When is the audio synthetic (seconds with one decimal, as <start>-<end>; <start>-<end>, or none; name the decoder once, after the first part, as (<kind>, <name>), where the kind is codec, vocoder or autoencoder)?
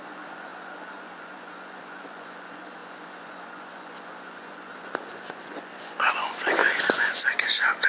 0.0-7.9 (vocoder, Vocos)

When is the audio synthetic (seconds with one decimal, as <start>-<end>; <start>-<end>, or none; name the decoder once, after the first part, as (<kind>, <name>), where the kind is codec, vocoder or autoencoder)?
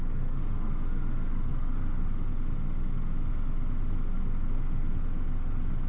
none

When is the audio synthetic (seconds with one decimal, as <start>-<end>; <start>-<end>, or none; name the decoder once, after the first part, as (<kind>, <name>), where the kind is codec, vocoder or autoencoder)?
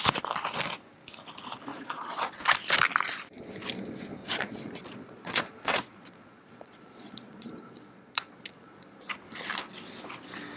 1.7-2.2 (vocoder, Vocos); 4.2-9.1